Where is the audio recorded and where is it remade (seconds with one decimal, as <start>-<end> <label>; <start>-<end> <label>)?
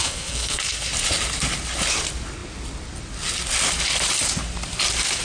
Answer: 0.0-0.9 remade; 0.9-5.2 recorded